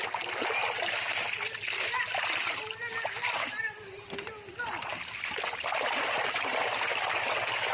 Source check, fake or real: real